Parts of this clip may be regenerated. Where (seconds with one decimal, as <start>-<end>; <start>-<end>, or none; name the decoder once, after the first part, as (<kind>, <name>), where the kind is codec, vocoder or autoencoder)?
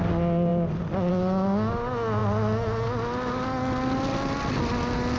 none